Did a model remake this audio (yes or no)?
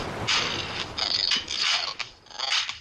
no